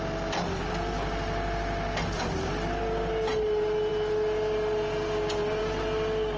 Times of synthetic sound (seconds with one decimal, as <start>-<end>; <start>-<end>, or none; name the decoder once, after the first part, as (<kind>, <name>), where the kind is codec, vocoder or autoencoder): none